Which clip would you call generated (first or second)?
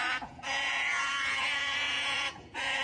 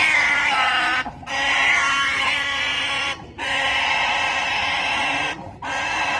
first